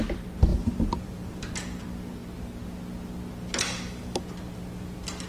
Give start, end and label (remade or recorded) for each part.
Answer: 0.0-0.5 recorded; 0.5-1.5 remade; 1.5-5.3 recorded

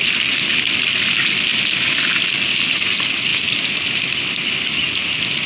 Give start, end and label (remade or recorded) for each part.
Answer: 0.0-5.5 recorded

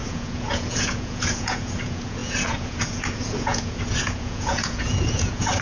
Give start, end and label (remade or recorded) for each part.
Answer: 0.0-5.6 remade

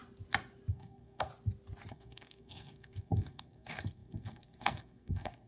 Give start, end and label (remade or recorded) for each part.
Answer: 0.0-0.7 recorded; 0.7-1.3 remade; 1.3-1.9 recorded; 1.9-5.5 remade

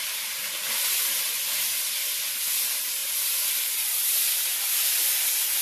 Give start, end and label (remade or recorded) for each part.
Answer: 0.0-3.0 recorded; 3.0-3.7 remade; 3.7-5.6 recorded